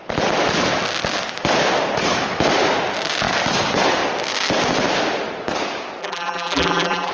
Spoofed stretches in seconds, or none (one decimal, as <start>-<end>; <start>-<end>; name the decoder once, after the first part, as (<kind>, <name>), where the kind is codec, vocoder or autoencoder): 6.0-7.1 (vocoder, BigVGAN v2)